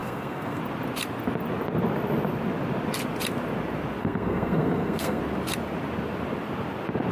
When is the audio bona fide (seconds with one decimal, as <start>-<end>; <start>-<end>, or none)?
0.6-4.0; 5.2-7.1